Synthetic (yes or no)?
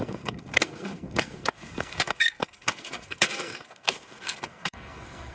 yes